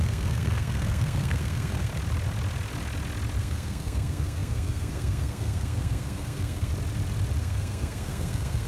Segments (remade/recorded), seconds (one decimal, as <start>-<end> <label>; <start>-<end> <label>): 0.0-1.9 remade; 1.9-3.4 recorded; 3.4-6.7 remade; 6.7-7.4 recorded; 7.4-8.7 remade